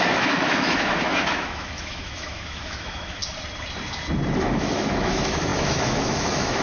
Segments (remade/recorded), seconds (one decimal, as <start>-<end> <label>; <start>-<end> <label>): 0.0-3.2 remade; 3.2-4.4 recorded; 4.4-6.6 remade